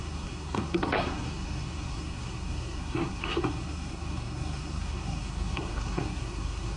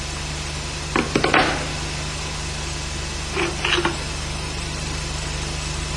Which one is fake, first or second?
first